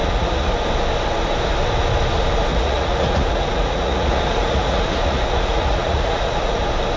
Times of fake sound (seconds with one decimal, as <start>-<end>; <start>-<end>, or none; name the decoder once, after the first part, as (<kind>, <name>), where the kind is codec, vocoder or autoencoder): 0.0-0.6 (vocoder, Vocos); 2.5-6.6